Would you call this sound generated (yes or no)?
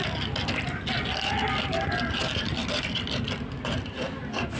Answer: no